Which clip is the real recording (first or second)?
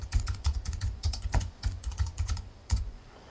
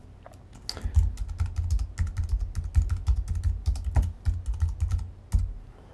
second